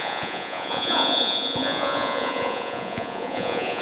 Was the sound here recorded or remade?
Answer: remade